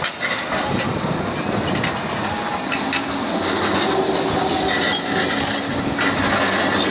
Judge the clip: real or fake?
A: real